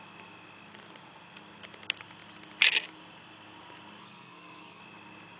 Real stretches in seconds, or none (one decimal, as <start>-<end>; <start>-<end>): 0.0-4.0; 4.8-5.4